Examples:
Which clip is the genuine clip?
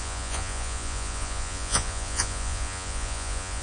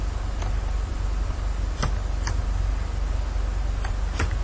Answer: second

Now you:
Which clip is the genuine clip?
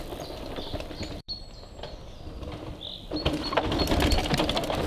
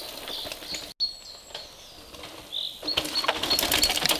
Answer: second